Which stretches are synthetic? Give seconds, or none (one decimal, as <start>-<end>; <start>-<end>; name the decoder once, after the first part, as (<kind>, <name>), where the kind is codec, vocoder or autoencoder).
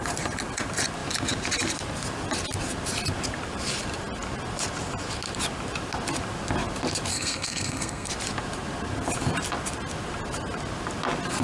7.1-8.1 (codec, SNAC)